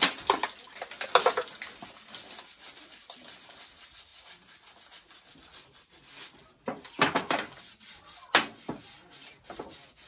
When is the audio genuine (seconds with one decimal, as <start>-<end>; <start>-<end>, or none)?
0.0-10.1